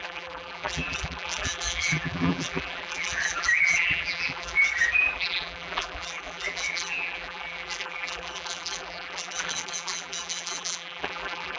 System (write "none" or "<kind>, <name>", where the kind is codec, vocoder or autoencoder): vocoder, BigVGAN v2